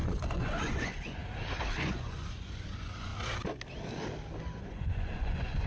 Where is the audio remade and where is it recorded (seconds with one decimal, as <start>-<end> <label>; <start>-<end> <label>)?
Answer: 0.0-1.2 remade; 1.2-1.8 recorded; 1.8-3.1 remade; 3.1-4.6 recorded; 4.6-5.7 remade

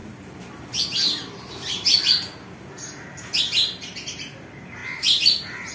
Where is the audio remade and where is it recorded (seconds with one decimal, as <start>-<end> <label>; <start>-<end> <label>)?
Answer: 0.0-5.7 recorded

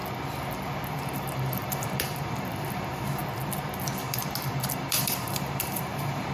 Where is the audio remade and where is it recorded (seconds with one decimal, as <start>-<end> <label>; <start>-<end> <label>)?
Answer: 0.0-0.9 recorded; 0.9-3.2 remade; 3.2-4.0 recorded; 4.0-6.3 remade